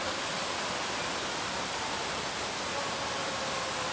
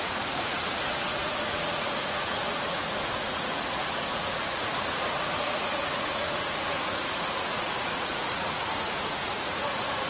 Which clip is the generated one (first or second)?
second